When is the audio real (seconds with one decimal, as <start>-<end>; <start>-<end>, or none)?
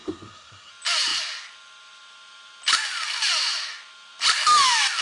0.7-5.0